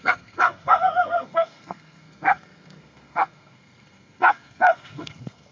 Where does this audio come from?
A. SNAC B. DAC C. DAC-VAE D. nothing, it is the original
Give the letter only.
A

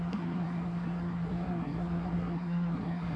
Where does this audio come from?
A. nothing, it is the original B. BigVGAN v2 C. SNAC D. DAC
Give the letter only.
C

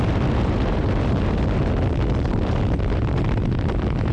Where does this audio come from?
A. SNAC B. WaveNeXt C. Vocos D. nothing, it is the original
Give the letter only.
D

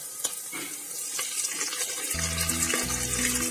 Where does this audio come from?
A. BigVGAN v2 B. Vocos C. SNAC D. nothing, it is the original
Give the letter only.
D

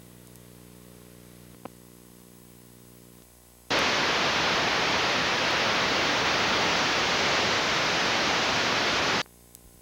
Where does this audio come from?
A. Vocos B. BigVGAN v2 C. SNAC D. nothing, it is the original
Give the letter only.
D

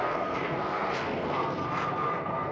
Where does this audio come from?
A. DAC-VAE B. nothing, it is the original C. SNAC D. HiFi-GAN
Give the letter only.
C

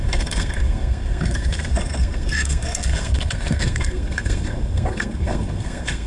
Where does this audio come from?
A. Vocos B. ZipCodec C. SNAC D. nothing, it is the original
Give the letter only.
C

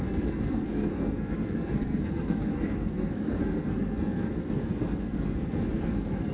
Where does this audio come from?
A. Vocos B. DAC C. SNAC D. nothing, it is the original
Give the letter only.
C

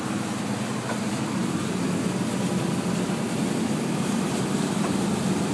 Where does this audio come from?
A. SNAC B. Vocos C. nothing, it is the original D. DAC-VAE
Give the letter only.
C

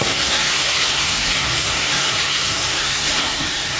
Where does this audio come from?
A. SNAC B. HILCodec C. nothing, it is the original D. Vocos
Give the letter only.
A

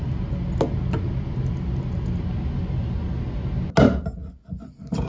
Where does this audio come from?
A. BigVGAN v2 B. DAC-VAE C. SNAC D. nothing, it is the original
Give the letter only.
D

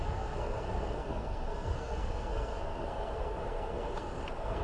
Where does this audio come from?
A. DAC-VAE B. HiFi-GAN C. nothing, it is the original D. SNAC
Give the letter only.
D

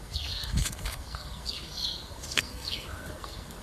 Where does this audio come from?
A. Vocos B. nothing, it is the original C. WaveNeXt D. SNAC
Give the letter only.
D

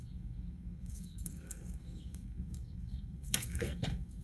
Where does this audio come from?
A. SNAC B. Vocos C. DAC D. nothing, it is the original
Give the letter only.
A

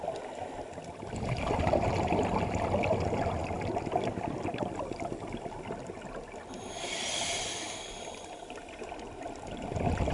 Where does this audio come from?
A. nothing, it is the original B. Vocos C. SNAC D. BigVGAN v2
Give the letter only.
A